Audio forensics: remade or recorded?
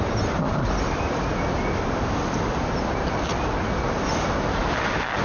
recorded